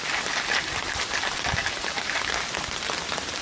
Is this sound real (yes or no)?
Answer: yes